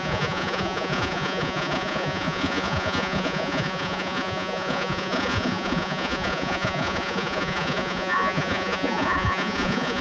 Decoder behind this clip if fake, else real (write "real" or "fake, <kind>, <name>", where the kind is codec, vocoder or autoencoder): fake, vocoder, Vocos